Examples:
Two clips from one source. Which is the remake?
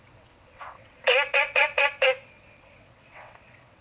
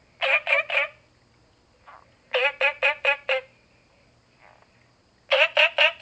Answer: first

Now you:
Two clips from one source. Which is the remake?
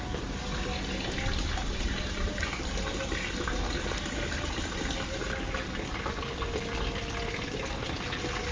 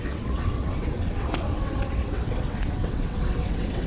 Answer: second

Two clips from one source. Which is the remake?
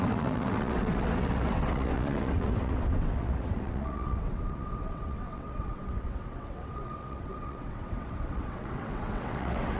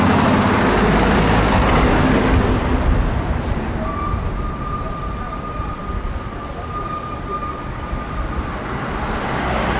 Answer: first